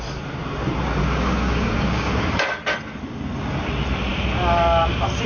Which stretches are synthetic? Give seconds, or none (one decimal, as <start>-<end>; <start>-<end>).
1.0-2.1